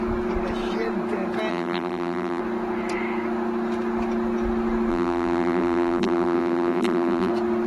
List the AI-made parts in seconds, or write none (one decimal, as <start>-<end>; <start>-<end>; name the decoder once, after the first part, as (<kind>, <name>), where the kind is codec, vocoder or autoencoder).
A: 1.5-2.4 (vocoder, BigVGAN v2); 4.9-7.3